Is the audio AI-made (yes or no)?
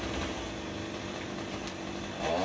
no